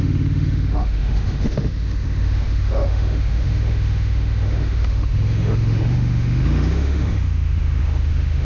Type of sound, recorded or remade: remade